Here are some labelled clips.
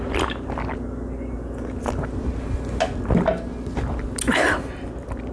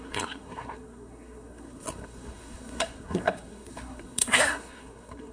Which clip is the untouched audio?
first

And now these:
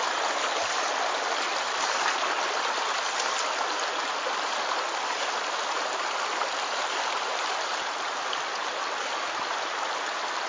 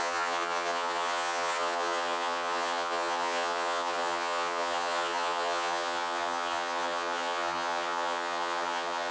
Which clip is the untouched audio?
first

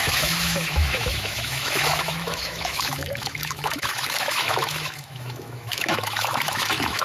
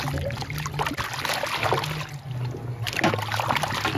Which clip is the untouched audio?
second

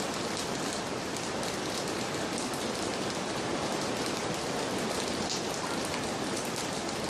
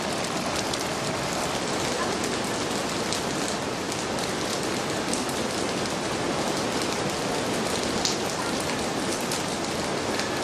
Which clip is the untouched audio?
second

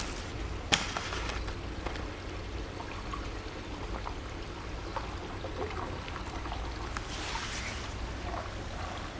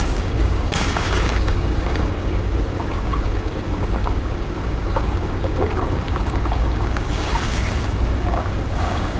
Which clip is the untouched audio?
first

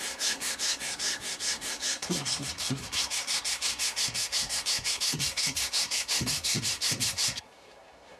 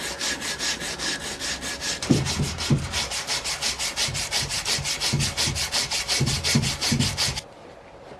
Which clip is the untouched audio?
second